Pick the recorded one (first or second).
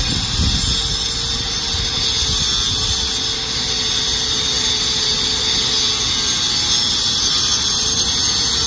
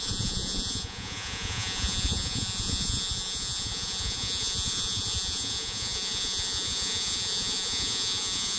first